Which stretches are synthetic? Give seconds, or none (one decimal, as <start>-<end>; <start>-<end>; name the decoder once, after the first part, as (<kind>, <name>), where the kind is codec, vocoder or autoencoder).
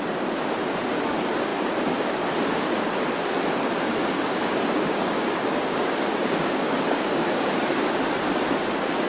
4.0-7.9 (codec, DAC)